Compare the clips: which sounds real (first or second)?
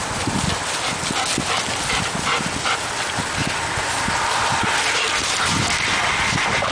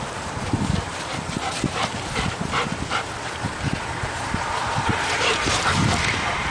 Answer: first